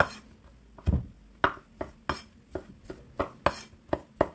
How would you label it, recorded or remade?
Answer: recorded